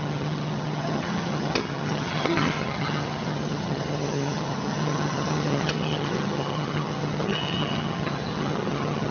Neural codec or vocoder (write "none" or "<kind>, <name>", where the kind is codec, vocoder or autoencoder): vocoder, HiFi-GAN